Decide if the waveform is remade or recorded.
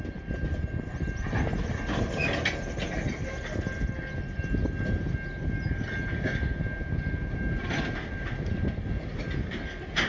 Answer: recorded